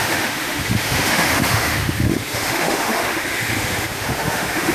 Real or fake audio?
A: fake